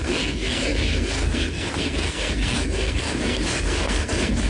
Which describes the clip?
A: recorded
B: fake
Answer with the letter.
B